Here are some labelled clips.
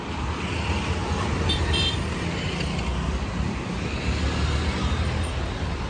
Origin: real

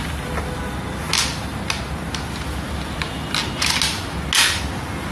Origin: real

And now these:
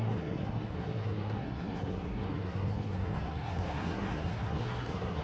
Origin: fake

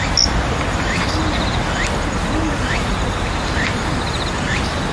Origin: real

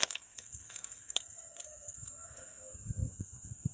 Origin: fake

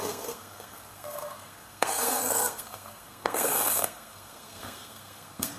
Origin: fake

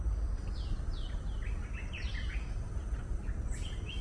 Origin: real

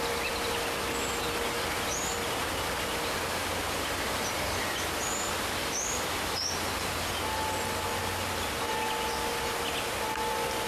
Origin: real